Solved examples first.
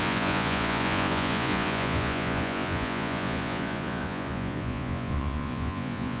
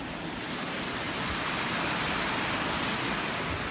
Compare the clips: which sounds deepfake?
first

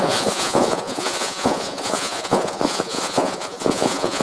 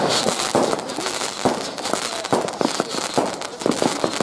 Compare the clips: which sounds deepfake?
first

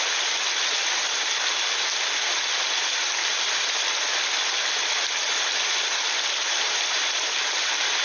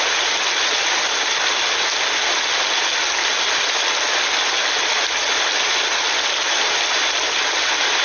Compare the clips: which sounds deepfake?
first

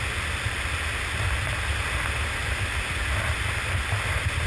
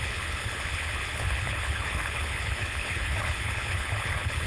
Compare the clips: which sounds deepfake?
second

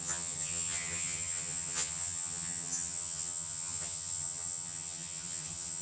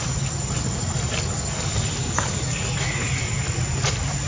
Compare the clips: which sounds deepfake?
first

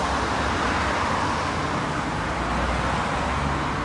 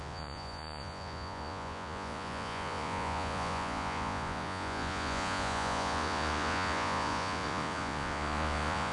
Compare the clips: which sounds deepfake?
second